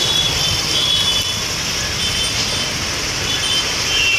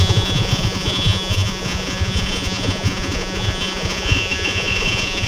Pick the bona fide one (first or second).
first